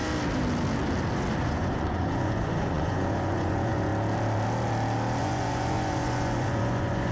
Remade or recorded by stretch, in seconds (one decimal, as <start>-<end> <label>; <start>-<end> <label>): 0.0-1.4 recorded; 1.4-3.9 remade; 3.9-5.2 recorded; 5.2-7.1 remade